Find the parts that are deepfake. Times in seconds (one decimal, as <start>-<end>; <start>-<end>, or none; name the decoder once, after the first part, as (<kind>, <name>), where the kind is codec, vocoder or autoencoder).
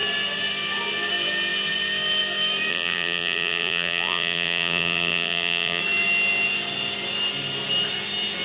2.7-5.8 (vocoder, BigVGAN v2)